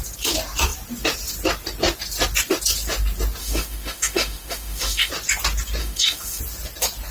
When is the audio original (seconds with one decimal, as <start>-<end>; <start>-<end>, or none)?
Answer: 0.0-3.4; 5.1-5.8; 6.4-7.1